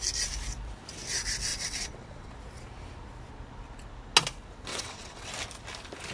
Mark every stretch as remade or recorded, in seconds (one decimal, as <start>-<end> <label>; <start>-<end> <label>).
0.0-1.5 recorded; 1.5-2.3 remade; 2.3-4.7 recorded; 4.7-5.3 remade; 5.3-6.1 recorded